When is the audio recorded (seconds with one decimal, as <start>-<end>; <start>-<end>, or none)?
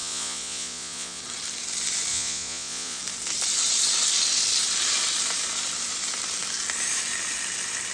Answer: 1.2-2.1; 3.0-7.9